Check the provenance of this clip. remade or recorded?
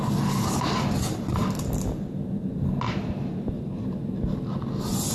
recorded